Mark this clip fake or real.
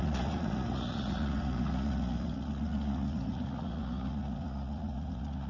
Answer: fake